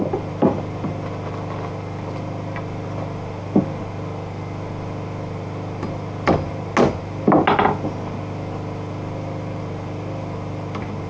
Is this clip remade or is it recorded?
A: recorded